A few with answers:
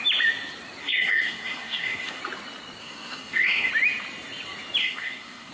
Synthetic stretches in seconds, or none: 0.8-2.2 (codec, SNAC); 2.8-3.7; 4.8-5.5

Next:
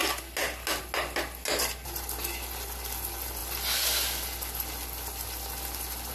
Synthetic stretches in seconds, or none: none

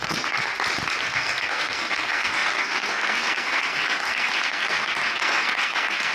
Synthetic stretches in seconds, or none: 0.0-0.5 (codec, SNAC); 1.0-6.1